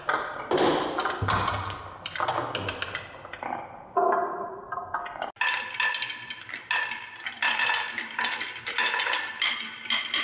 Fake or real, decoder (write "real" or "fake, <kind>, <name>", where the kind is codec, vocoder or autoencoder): real